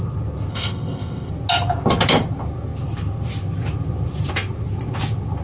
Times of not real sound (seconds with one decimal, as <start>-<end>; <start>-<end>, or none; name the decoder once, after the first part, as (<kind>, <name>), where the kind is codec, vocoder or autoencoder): 0.5-1.3 (codec, ZipCodec)

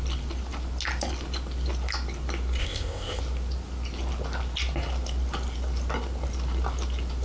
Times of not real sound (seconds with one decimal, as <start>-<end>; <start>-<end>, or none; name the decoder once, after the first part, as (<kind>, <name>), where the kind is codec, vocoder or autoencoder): 2.6-3.2 (codec, ZipCodec)

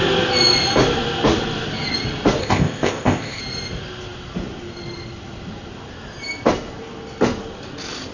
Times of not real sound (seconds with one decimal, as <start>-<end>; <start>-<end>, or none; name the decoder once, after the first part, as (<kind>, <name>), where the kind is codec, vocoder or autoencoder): 2.4-3.4 (codec, ZipCodec)

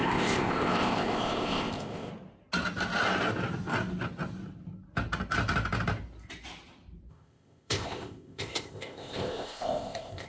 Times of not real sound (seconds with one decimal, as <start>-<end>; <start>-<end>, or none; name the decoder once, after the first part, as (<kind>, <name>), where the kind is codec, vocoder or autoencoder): 0.0-2.1 (codec, ZipCodec); 7.1-10.3